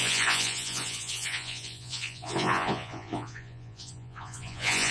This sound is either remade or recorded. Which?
remade